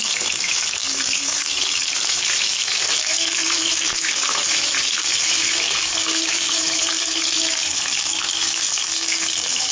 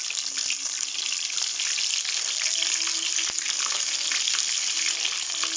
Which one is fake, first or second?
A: first